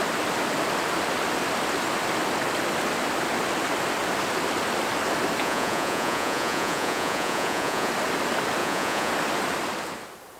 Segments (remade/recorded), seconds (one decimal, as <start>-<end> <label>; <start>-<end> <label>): 0.0-5.4 recorded; 5.4-7.9 remade; 7.9-8.6 recorded; 8.6-9.1 remade; 9.1-10.4 recorded